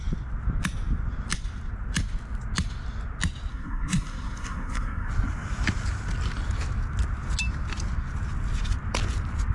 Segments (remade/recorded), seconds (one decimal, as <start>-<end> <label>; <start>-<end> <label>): 0.0-3.5 recorded; 3.5-5.1 remade; 5.1-9.5 recorded